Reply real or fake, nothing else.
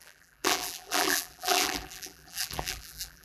fake